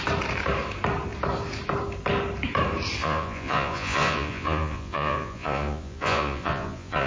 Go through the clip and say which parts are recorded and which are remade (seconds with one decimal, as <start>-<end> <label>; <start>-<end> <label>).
0.0-3.0 recorded; 3.0-7.1 remade